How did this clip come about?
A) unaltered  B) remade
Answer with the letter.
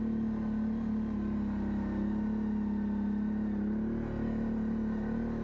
A